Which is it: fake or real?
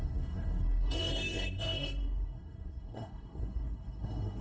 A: fake